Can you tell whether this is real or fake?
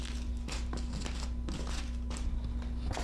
real